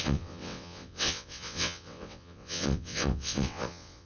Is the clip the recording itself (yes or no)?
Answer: no